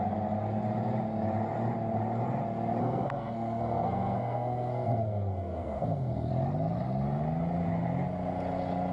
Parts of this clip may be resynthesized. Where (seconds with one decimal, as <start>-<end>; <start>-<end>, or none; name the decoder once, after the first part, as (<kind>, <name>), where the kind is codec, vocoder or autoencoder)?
2.8-6.3 (codec, SNAC)